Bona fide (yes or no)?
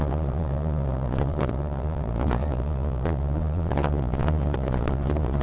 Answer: no